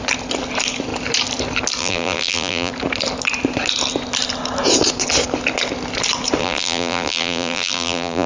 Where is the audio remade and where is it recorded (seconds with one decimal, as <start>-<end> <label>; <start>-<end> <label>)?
0.0-1.8 recorded; 1.8-2.7 remade; 2.7-6.4 recorded; 6.4-8.3 remade